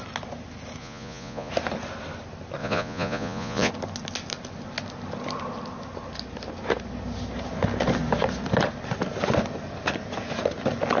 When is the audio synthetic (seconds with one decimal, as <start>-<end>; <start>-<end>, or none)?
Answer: 0.8-1.5; 2.6-3.7